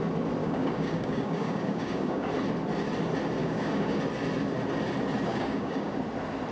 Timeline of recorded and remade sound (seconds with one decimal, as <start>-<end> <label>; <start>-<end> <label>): 0.0-0.4 recorded; 0.4-2.3 remade; 2.3-3.4 recorded; 3.4-4.0 remade; 4.0-5.3 recorded; 5.3-5.9 remade; 5.9-6.5 recorded